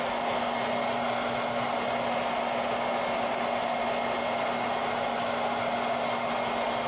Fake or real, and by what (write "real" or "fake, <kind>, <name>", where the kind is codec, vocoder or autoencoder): real